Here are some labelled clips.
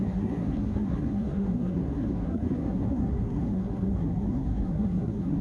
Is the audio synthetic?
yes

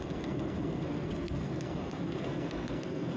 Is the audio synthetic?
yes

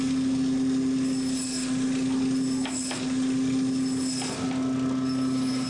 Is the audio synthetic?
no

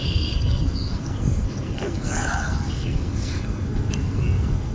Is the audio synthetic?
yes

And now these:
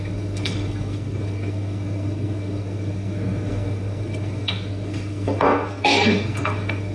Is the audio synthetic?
yes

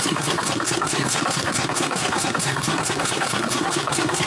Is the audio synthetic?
yes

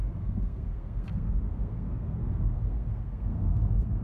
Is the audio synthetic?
yes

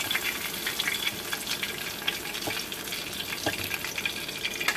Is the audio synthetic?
no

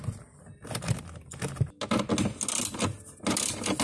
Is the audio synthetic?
no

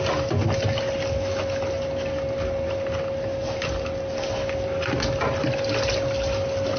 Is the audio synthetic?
no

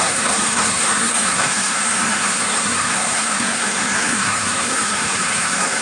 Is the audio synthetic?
yes